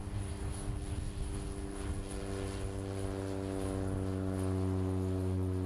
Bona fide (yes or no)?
yes